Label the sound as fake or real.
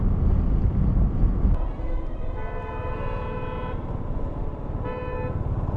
real